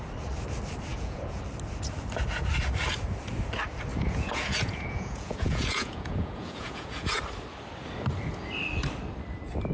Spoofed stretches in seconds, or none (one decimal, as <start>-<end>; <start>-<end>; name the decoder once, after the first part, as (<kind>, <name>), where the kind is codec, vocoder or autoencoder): 0.9-1.4 (vocoder, Vocos); 3.9-7.2

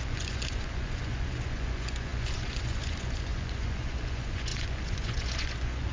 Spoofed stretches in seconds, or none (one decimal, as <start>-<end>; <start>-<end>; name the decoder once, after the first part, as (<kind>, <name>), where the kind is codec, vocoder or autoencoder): 0.0-5.9 (vocoder, Vocos)

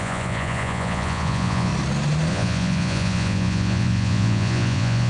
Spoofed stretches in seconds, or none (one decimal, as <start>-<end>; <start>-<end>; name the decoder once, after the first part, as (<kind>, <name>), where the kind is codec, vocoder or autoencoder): 0.0-1.7 (vocoder, Vocos); 2.3-5.1

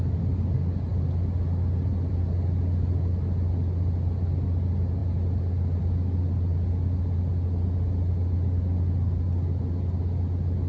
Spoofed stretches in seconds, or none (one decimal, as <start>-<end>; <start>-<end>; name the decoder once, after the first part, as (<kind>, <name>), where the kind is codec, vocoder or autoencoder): none

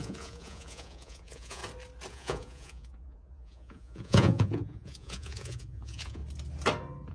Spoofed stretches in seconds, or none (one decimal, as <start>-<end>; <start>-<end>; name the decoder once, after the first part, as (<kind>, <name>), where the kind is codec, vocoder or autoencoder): 0.0-1.6 (vocoder, Vocos); 2.1-6.2

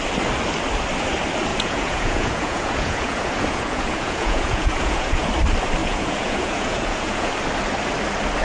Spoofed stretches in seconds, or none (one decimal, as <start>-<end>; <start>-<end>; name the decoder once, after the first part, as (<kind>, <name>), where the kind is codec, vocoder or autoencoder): 1.5-5.3 (vocoder, Vocos); 5.8-7.3

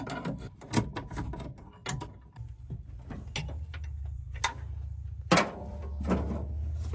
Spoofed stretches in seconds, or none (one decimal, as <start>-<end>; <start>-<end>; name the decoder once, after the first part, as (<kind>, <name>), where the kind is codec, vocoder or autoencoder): none